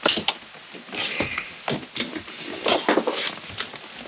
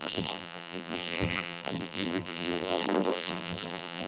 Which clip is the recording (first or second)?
first